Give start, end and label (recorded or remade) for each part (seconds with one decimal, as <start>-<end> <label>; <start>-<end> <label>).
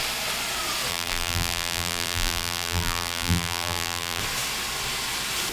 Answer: 0.0-0.9 recorded; 0.9-4.2 remade; 4.2-5.5 recorded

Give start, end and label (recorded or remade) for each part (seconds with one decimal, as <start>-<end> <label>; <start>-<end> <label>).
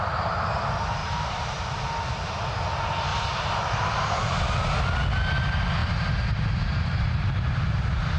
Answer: 0.0-1.0 recorded; 1.0-1.6 remade; 1.6-3.1 recorded; 3.1-4.3 remade; 4.3-5.8 recorded; 5.8-7.3 remade; 7.3-8.2 recorded